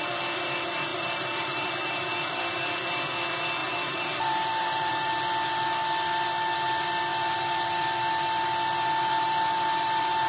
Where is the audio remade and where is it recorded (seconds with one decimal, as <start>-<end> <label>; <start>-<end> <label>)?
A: 0.0-0.9 recorded; 0.9-2.4 remade; 2.4-3.6 recorded; 3.6-5.1 remade; 5.1-10.3 recorded